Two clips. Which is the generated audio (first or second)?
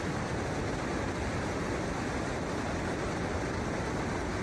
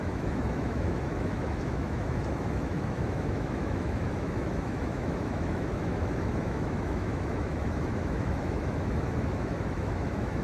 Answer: second